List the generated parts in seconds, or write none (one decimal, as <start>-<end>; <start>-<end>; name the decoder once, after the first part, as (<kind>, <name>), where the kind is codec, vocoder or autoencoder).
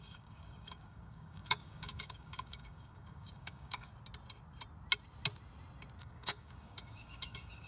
0.0-3.9 (codec, DAC); 6.0-7.7